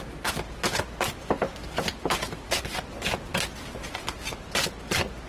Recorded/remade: recorded